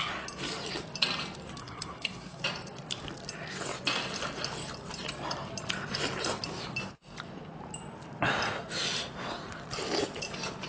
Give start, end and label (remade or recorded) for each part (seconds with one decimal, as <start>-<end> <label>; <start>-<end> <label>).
0.0-1.6 recorded; 1.6-2.4 remade; 2.4-10.7 recorded

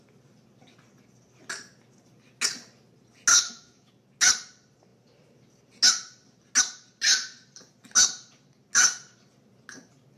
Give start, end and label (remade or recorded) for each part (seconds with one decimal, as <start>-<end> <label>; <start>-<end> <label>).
0.0-3.3 recorded; 3.3-3.9 remade; 3.9-10.2 recorded